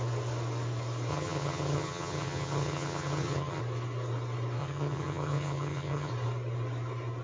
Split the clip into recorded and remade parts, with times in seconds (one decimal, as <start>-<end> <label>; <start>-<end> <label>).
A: 0.0-1.1 recorded; 1.1-3.6 remade; 3.6-4.6 recorded; 4.6-6.1 remade; 6.1-7.2 recorded

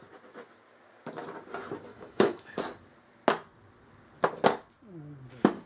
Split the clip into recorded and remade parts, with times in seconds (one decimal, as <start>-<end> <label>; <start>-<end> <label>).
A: 0.0-1.9 recorded; 1.9-2.6 remade; 2.6-5.7 recorded

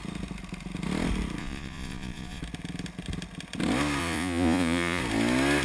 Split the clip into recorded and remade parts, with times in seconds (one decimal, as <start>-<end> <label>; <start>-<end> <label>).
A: 0.0-1.4 recorded; 1.4-2.4 remade; 2.4-4.0 recorded; 4.0-5.0 remade; 5.0-5.6 recorded